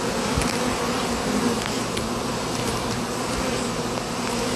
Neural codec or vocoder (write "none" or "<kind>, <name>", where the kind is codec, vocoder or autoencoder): none